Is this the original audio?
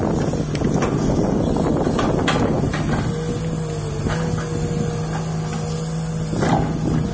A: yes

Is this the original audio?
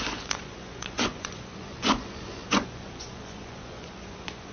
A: no